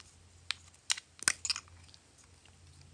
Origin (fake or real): real